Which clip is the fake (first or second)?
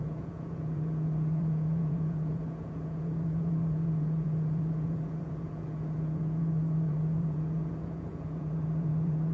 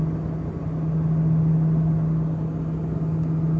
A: first